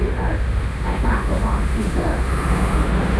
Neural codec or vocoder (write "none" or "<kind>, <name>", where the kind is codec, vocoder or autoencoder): autoencoder, DAC-VAE